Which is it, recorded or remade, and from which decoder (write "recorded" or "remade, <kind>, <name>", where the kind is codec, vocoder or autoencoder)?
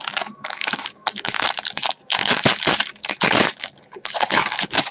remade, codec, DAC